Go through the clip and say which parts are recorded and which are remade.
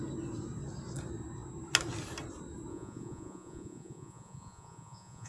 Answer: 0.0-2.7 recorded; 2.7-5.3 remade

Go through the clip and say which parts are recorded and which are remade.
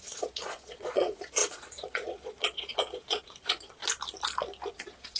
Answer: 0.0-3.8 remade; 3.8-4.7 recorded; 4.7-5.2 remade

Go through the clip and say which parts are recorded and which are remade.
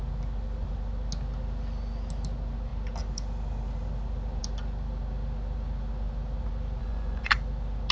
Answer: 0.0-6.8 recorded; 6.8-7.3 remade; 7.3-7.9 recorded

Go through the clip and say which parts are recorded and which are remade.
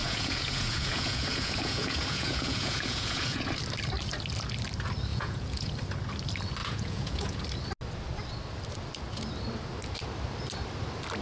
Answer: 0.0-3.5 remade; 3.5-5.1 recorded; 5.1-5.7 remade; 5.7-6.6 recorded; 6.6-7.4 remade; 7.4-11.2 recorded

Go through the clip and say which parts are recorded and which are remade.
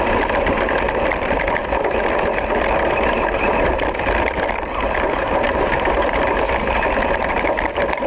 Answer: 0.0-8.1 recorded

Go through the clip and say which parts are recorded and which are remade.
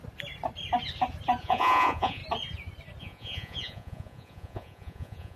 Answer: 0.0-1.4 recorded; 1.4-2.2 remade; 2.2-3.0 recorded; 3.0-5.4 remade